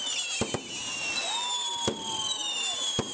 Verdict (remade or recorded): recorded